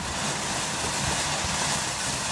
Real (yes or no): yes